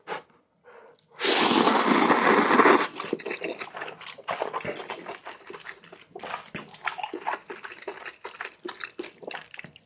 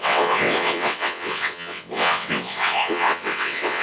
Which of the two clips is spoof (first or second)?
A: second